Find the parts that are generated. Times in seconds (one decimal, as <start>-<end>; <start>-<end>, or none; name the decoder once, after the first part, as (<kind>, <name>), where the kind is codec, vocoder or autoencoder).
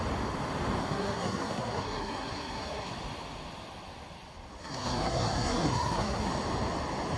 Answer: 0.8-2.9 (codec, SNAC); 4.6-6.3